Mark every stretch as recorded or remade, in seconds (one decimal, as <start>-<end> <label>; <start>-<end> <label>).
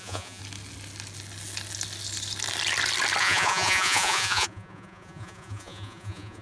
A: 0.0-0.4 remade; 0.4-3.2 recorded; 3.2-6.4 remade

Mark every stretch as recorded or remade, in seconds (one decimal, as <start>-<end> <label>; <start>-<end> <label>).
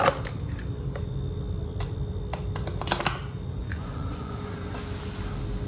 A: 0.0-3.6 recorded; 3.6-4.7 remade; 4.7-5.7 recorded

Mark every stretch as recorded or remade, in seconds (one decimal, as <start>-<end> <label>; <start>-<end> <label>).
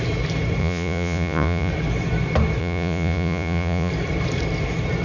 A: 0.0-0.6 recorded; 0.6-1.7 remade; 1.7-2.6 recorded; 2.6-3.9 remade; 3.9-5.0 recorded